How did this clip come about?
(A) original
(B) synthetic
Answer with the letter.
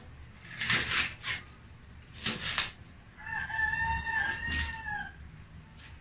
A